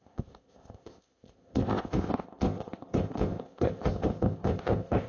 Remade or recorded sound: remade